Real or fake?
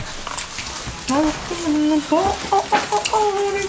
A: real